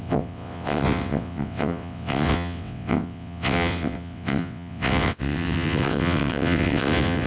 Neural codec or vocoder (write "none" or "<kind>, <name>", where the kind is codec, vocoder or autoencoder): vocoder, WaveNeXt